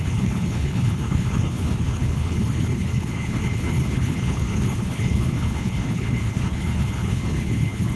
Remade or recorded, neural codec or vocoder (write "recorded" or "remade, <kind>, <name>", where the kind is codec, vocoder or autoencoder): remade, codec, HILCodec